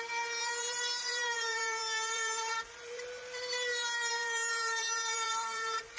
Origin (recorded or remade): remade